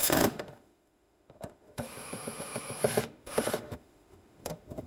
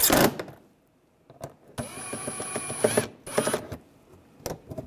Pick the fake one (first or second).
first